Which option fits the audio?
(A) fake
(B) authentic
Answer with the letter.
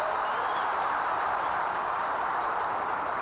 A